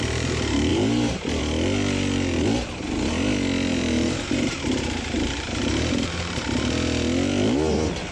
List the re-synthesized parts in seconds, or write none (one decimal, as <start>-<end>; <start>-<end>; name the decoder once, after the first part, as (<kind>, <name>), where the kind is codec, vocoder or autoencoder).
0.7-1.4 (vocoder, BigVGAN v2); 3.7-6.7